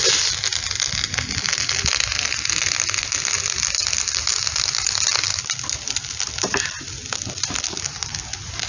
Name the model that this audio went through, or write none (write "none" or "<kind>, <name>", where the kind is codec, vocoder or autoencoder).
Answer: none